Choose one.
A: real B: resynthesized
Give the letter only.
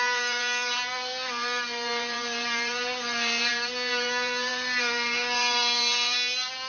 B